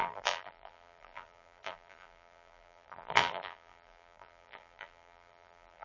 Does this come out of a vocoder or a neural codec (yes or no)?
yes